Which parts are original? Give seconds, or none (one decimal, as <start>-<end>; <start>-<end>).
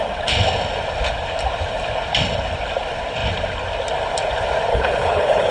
0.0-4.7